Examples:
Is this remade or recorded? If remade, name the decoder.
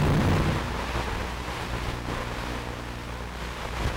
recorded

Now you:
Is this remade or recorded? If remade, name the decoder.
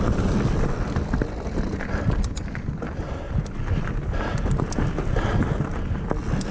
recorded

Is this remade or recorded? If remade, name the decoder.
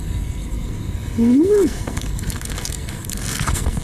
remade, codec, SNAC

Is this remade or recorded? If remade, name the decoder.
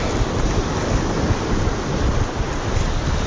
recorded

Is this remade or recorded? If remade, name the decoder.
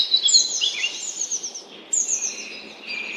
recorded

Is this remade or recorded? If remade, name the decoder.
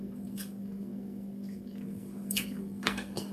remade, codec, SNAC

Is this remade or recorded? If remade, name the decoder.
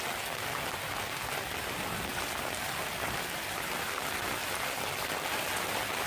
recorded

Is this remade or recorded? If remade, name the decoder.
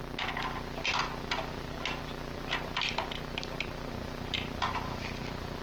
recorded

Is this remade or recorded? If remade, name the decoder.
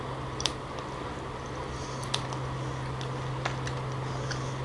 recorded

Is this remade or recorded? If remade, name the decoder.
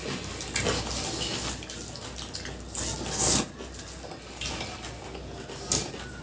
recorded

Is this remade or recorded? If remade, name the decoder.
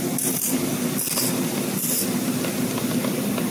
recorded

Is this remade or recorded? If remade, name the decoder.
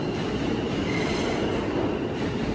recorded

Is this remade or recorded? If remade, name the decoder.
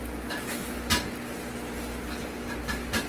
recorded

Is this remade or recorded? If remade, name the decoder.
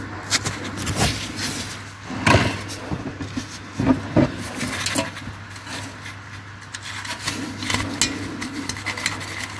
recorded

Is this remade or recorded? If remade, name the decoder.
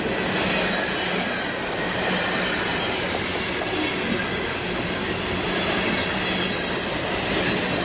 recorded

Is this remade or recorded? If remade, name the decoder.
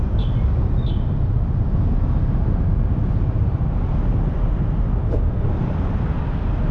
recorded